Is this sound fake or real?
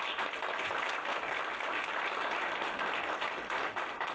real